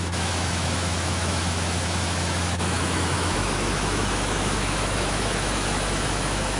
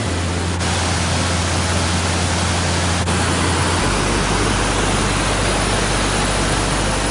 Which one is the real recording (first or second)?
second